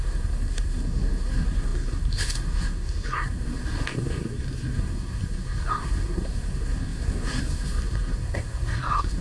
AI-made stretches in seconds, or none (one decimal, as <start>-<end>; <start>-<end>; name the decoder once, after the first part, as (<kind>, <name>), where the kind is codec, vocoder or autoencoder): 0.0-9.2 (codec, SNAC)